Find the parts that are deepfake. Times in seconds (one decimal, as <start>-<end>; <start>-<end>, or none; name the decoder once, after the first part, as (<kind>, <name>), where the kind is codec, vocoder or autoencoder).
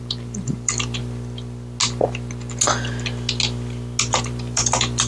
0.0-1.0 (vocoder, BigVGAN v2); 4.1-5.1